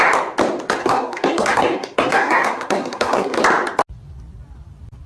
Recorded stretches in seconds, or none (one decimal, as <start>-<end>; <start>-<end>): 0.0-0.8; 3.4-5.1